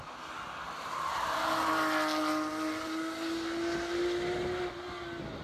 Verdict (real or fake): real